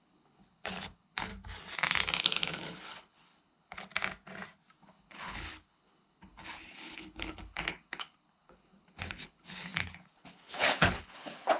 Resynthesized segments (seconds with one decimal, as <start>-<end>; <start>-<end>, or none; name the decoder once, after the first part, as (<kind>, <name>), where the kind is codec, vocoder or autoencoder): 0.0-1.3 (codec, HILCodec); 2.2-3.9; 4.8-11.6